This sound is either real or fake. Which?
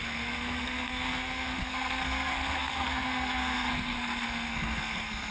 fake